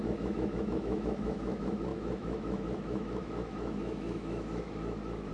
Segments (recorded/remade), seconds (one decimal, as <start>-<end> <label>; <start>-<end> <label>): 0.0-5.3 remade